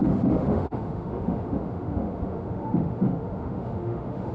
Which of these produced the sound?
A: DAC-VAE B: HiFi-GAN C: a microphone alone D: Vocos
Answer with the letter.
A